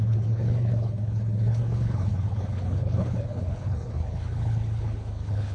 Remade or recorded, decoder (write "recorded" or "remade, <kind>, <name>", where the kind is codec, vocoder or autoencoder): remade, codec, HILCodec